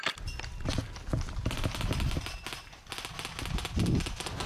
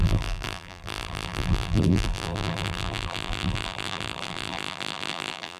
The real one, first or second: first